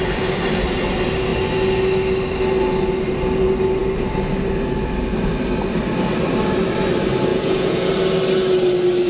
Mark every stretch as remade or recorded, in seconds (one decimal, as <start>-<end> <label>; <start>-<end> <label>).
0.0-7.3 recorded; 7.3-7.9 remade; 7.9-9.1 recorded